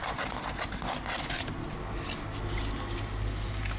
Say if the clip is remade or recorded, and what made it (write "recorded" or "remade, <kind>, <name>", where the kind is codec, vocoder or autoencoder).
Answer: recorded